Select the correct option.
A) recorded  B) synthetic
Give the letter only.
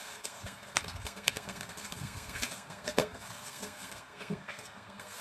B